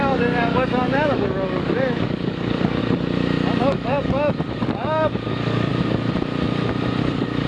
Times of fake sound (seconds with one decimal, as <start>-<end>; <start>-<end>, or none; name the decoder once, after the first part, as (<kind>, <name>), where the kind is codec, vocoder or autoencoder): 0.0-2.8 (codec, DAC); 3.6-5.7; 7.0-7.5